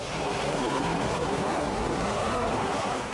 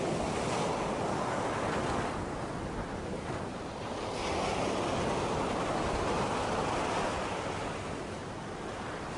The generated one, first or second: first